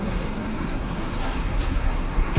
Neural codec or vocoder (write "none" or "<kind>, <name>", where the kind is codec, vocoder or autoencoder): codec, SNAC